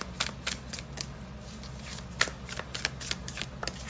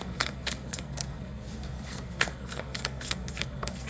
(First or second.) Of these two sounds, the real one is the first